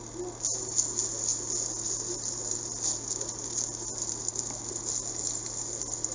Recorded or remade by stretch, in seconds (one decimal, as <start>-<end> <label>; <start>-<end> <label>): 0.0-6.1 recorded